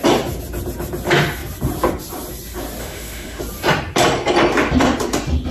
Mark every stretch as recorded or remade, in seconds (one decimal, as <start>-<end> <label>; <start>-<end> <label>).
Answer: 0.0-2.8 recorded; 2.8-3.4 remade; 3.4-5.5 recorded